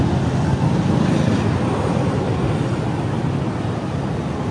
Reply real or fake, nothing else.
real